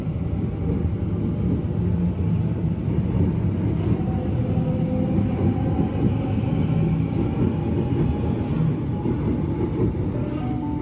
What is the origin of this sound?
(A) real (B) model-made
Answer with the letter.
A